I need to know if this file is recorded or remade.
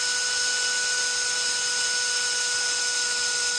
recorded